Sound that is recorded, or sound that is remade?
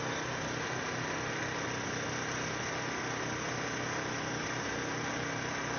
recorded